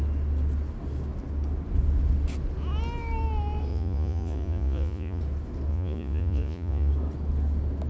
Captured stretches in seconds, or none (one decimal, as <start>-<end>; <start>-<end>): 0.0-3.7; 5.2-5.7; 6.9-7.9

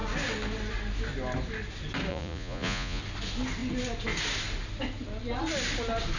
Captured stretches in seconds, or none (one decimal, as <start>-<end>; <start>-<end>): 0.0-2.1; 3.0-6.2

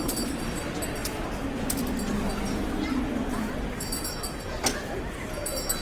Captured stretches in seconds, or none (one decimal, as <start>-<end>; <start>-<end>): 0.0-5.8